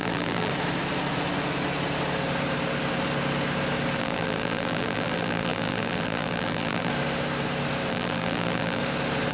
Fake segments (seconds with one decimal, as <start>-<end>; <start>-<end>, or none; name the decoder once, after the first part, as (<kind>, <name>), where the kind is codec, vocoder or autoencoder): 0.0-0.5 (vocoder, BigVGAN v2); 4.0-6.9; 7.9-8.8

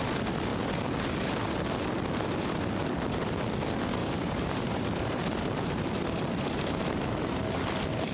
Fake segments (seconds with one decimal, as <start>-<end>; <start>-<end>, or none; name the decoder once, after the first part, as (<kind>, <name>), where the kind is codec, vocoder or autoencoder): 4.0-7.4 (vocoder, BigVGAN v2)

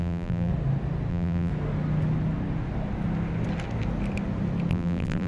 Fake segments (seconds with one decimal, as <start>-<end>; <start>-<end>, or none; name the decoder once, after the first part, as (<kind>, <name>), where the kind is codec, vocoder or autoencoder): 0.0-0.5 (vocoder, BigVGAN v2); 1.1-1.5; 4.7-5.3

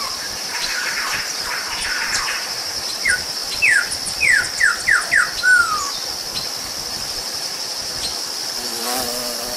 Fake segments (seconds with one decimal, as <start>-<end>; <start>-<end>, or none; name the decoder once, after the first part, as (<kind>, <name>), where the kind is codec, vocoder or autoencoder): 0.0-3.4 (vocoder, BigVGAN v2); 7.1-7.9